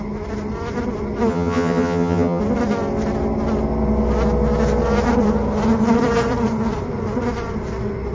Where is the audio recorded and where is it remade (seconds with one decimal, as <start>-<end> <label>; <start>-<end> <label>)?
0.0-1.3 recorded; 1.3-2.4 remade; 2.4-8.1 recorded